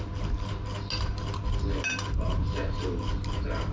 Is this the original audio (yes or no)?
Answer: yes